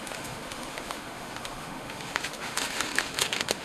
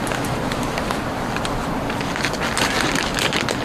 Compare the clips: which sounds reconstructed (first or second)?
first